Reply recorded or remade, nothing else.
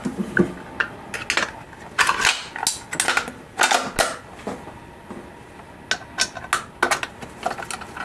recorded